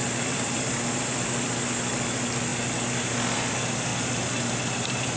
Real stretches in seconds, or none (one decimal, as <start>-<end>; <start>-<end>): 2.5-3.5; 3.9-4.6